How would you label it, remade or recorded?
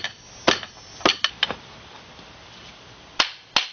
recorded